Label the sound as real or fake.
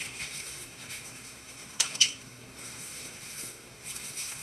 fake